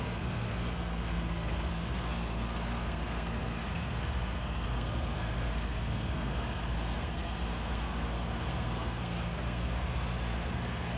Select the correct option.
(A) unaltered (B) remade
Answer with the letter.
B